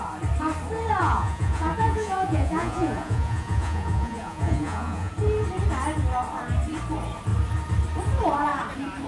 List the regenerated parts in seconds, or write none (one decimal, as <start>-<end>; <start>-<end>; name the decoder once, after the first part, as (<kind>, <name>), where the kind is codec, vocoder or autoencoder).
1.0-5.1 (vocoder, Vocos)

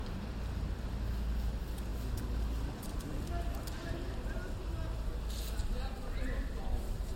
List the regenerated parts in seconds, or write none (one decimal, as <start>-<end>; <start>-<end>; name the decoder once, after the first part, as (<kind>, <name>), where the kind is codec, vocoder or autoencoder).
none

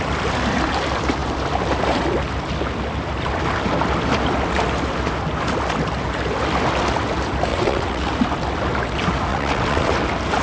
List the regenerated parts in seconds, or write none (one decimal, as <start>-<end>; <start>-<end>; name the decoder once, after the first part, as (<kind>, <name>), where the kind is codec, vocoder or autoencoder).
7.5-8.1 (vocoder, WaveNeXt); 9.3-9.9

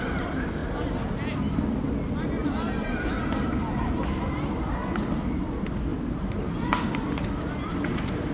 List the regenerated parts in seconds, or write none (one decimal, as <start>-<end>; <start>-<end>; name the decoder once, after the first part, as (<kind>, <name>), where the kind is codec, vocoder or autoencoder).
2.4-3.7 (vocoder, BigVGAN v2); 5.9-6.5

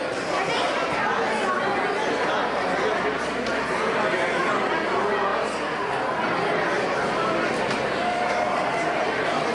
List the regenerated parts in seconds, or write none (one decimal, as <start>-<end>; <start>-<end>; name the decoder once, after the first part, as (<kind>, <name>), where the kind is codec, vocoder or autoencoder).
none

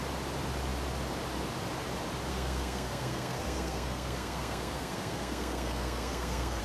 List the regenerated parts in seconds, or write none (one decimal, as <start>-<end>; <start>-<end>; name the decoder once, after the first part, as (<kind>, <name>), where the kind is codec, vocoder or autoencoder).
2.3-6.6 (codec, SNAC)